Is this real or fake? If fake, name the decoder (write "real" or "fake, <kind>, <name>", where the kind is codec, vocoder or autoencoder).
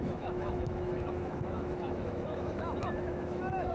fake, autoencoder, DAC-VAE